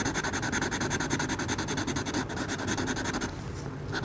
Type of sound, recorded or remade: recorded